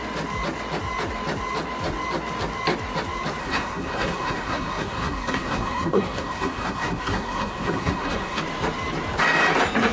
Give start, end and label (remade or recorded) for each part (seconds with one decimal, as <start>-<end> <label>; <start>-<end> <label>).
0.0-3.4 recorded; 3.4-8.4 remade; 8.4-9.9 recorded